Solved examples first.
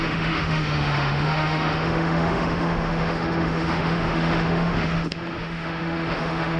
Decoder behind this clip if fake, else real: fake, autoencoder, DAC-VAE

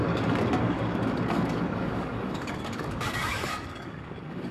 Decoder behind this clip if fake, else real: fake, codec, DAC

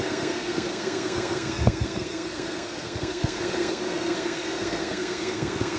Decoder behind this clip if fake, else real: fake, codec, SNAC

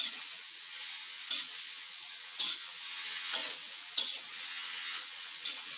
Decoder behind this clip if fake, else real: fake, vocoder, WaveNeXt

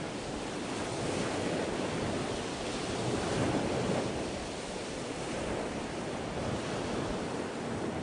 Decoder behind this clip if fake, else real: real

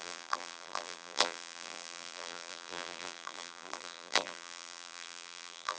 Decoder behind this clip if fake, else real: fake, vocoder, BigVGAN v2